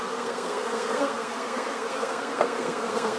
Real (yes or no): no